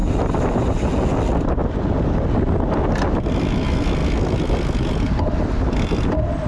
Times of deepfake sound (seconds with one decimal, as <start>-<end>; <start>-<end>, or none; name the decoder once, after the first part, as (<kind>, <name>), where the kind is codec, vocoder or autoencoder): 0.0-0.9 (vocoder, BigVGAN v2)

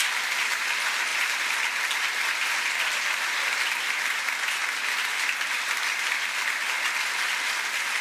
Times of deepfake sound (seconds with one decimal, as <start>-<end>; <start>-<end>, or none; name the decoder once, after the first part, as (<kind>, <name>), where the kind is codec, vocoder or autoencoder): none

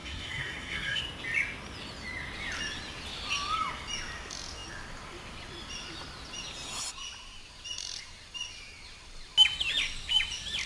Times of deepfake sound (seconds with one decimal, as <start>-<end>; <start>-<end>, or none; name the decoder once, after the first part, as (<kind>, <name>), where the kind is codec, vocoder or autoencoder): 0.0-1.0 (codec, SNAC)

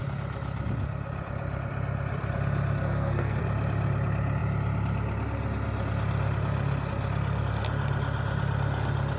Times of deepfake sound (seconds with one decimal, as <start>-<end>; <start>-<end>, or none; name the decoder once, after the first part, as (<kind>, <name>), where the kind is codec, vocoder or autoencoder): 2.8-3.4 (codec, SNAC)

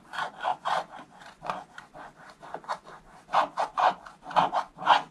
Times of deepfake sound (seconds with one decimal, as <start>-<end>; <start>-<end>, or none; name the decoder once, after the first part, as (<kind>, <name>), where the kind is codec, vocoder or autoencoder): 0.0-5.1 (vocoder, Vocos)

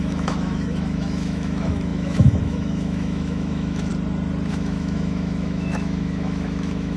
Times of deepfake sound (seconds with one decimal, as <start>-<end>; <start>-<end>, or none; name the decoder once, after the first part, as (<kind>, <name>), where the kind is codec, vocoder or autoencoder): 0.0-3.9 (autoencoder, DAC-VAE); 4.5-7.0